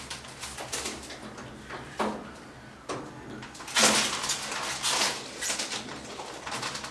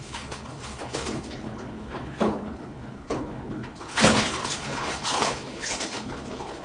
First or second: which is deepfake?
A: second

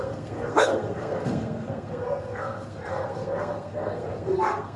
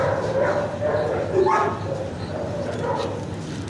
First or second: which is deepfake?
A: first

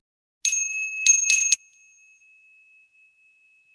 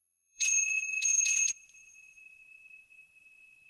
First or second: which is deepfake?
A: second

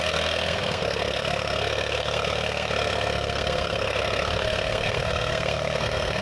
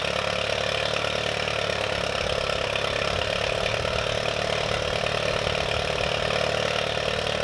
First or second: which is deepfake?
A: first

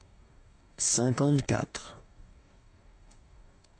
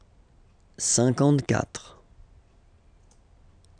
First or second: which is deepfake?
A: first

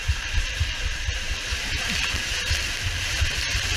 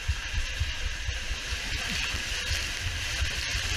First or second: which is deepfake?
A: first